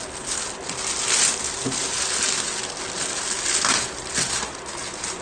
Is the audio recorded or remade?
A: recorded